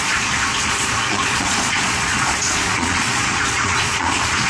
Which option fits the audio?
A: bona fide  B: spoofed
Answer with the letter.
B